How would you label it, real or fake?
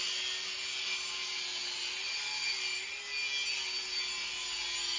real